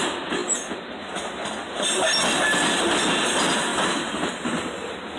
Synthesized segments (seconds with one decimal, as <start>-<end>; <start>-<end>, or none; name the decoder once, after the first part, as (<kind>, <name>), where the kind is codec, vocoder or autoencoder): none

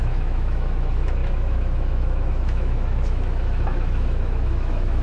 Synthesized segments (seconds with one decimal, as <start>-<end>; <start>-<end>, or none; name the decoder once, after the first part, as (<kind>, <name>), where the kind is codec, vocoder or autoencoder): 0.0-5.0 (autoencoder, DAC-VAE)

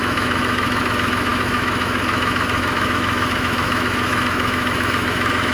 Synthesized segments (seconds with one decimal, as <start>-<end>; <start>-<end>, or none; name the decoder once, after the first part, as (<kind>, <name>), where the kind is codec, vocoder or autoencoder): 0.0-5.5 (autoencoder, DAC-VAE)

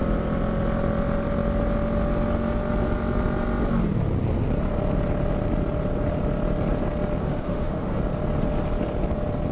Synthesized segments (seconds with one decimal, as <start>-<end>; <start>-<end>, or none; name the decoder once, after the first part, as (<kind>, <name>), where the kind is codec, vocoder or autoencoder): 7.2-8.0 (autoencoder, DAC-VAE)

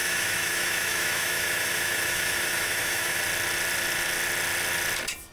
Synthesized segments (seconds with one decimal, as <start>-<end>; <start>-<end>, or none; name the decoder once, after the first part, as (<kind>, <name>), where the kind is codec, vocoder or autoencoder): 0.0-3.2 (autoencoder, DAC-VAE)

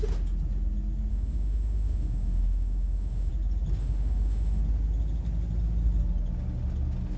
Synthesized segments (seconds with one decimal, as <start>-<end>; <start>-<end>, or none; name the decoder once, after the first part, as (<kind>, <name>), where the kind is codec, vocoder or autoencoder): 1.1-3.3 (autoencoder, DAC-VAE); 3.8-4.6